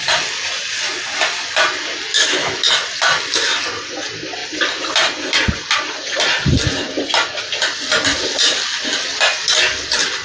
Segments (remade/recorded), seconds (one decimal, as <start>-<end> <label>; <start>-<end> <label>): 0.0-2.1 recorded; 2.1-2.7 remade; 2.7-10.2 recorded